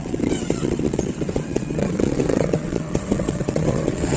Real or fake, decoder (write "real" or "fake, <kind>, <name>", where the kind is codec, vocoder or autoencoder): fake, vocoder, WaveNeXt